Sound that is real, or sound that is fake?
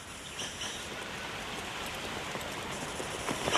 real